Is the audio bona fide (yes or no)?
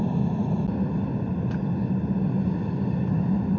yes